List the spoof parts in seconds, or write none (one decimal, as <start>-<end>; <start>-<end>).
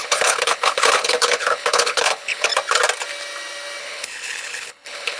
0.0-2.5; 3.8-5.2